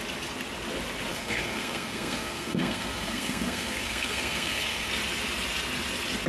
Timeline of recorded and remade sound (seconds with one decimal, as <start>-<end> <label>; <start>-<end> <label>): 0.0-1.1 recorded; 1.1-4.9 remade; 4.9-6.3 recorded